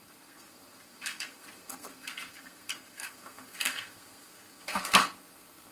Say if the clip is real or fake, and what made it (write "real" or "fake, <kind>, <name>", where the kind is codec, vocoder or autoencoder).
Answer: fake, codec, SNAC